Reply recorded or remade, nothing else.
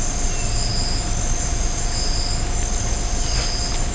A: recorded